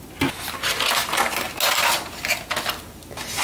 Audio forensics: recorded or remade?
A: recorded